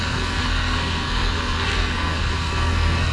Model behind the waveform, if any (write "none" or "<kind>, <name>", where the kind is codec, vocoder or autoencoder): codec, SNAC